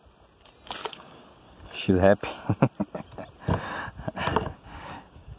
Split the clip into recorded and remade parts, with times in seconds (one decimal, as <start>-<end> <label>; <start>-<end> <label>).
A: 0.0-0.8 recorded; 0.8-1.9 remade; 1.9-4.2 recorded; 4.2-5.4 remade